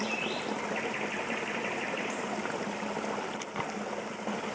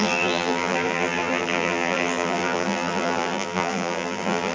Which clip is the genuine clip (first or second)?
first